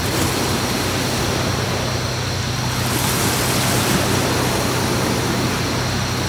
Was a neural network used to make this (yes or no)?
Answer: no